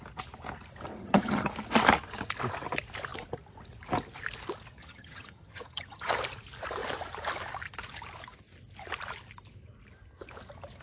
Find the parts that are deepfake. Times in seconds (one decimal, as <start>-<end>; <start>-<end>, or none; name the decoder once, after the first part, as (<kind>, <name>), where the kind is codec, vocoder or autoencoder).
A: 1.0-1.5 (vocoder, HiFi-GAN); 4.8-6.2